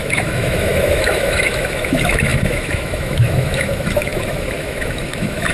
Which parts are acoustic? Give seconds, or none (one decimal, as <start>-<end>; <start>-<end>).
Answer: none